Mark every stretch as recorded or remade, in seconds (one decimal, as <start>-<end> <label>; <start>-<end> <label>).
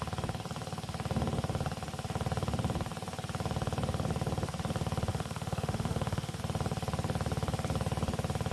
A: 0.0-5.1 recorded; 5.1-6.4 remade; 6.4-8.5 recorded